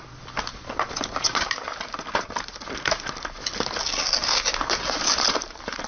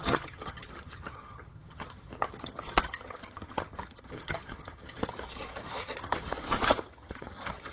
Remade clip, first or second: second